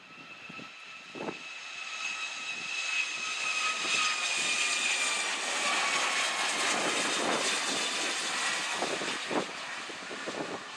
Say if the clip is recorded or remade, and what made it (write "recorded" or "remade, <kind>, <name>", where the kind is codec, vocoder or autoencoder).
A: recorded